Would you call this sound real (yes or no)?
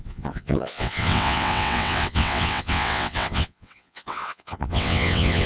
no